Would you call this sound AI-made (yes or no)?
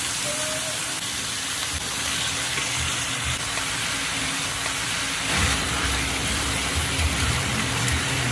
yes